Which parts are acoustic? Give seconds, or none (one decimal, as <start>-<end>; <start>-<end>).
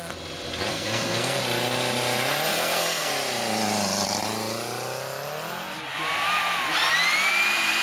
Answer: 0.0-0.7; 1.4-2.5; 3.1-7.8